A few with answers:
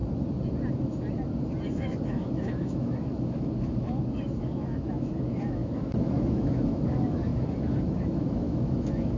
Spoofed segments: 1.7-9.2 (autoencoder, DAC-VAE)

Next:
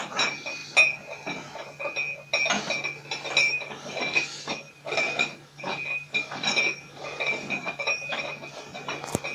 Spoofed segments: 3.4-8.3 (codec, DAC)

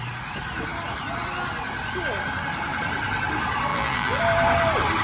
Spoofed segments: 3.7-4.2 (vocoder, BigVGAN v2)

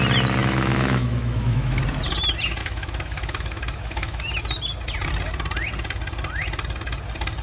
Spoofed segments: 0.4-1.8 (autoencoder, DAC-VAE); 2.6-4.4

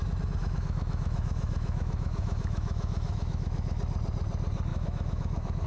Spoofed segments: 0.4-3.8 (autoencoder, DAC-VAE); 4.7-5.7